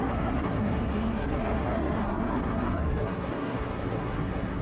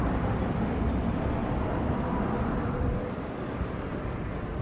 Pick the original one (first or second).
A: second